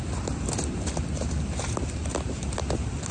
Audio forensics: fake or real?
fake